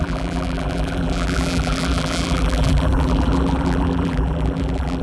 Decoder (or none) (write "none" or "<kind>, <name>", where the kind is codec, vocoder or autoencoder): vocoder, BigVGAN v2